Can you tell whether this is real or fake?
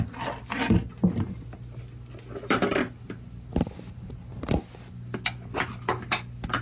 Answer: real